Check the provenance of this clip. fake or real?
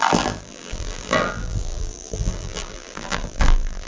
fake